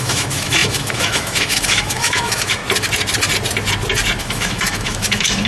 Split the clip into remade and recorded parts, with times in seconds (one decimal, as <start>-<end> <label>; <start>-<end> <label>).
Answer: 0.0-2.6 remade; 2.6-4.2 recorded; 4.2-5.5 remade